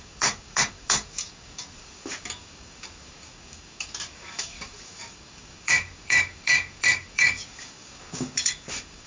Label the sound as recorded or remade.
remade